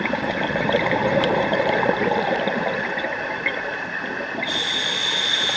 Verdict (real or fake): fake